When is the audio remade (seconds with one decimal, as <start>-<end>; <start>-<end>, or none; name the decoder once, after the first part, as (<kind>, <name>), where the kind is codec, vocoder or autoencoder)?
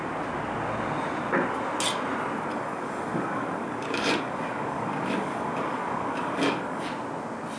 2.5-6.9 (codec, DAC)